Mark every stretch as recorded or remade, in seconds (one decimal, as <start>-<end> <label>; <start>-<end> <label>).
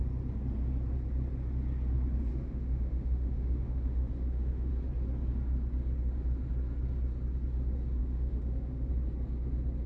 0.0-2.3 recorded; 2.3-4.7 remade; 4.7-8.0 recorded; 8.0-8.9 remade; 8.9-9.9 recorded